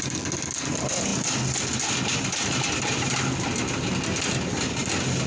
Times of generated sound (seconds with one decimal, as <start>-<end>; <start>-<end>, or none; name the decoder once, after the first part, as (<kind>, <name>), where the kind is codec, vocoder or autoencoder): none